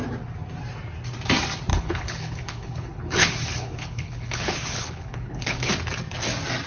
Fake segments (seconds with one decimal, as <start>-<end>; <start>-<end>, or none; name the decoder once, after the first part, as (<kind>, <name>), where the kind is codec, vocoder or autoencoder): 1.7-5.7 (codec, HILCodec)